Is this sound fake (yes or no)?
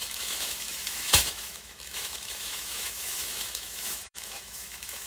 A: yes